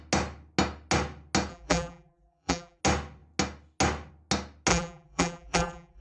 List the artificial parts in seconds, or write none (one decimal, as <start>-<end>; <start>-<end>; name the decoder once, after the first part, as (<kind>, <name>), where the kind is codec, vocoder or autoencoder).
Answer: 1.5-2.8 (vocoder, BigVGAN v2); 4.7-6.0